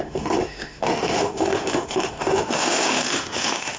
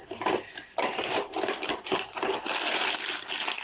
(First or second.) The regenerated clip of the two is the first